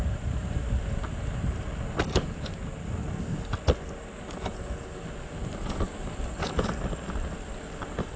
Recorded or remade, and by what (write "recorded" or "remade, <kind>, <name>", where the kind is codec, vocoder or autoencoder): recorded